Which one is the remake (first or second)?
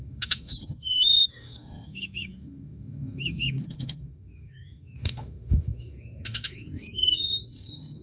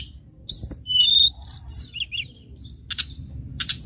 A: first